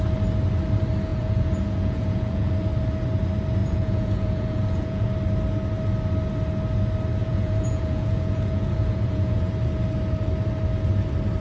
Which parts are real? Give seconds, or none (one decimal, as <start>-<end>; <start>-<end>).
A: 0.0-1.1; 2.5-3.6; 5.1-7.2; 9.5-11.4